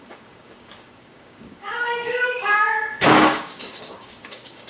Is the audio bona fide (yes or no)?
no